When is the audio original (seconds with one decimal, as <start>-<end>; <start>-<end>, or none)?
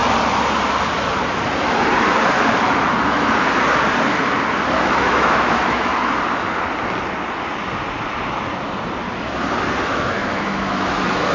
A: 0.0-4.8; 5.9-9.9